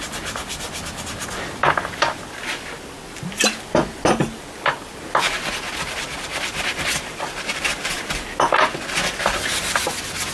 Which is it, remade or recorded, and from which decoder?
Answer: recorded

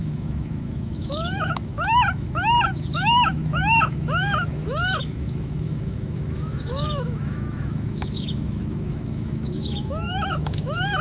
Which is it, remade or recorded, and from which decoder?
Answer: remade, autoencoder, DAC-VAE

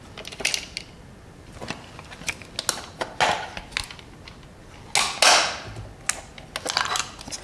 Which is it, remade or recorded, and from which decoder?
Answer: recorded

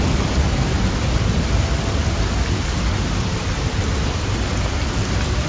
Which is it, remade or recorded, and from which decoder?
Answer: recorded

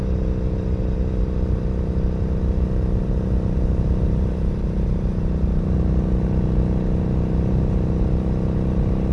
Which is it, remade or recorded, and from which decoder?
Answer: recorded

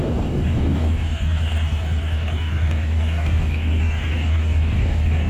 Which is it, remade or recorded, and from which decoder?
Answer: remade, codec, DAC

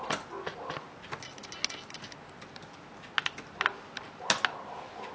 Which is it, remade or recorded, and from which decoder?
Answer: recorded